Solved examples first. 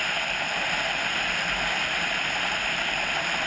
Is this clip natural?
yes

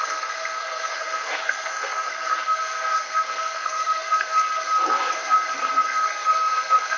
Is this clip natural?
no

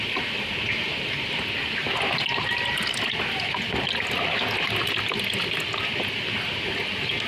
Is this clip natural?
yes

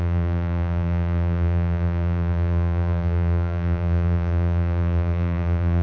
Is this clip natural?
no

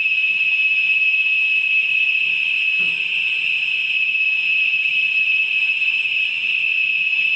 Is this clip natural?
no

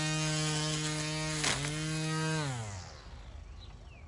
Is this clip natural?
yes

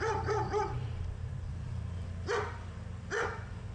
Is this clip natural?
no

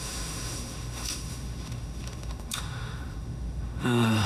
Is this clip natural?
no